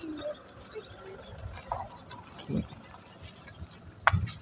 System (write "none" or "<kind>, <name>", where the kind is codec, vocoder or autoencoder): none